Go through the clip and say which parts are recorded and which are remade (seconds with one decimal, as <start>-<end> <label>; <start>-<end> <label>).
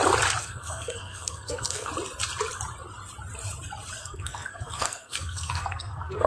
0.0-0.4 recorded; 0.4-1.9 remade; 1.9-4.0 recorded; 4.0-6.3 remade